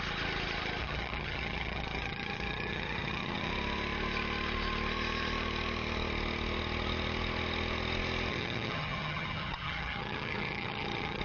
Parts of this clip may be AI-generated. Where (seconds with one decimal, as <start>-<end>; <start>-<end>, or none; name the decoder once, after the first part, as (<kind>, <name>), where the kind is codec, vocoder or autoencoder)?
0.8-3.5 (vocoder, HiFi-GAN); 8.3-11.2